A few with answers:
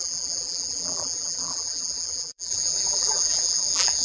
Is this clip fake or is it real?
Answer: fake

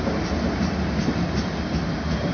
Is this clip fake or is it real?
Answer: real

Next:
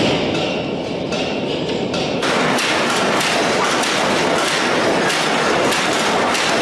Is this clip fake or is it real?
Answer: real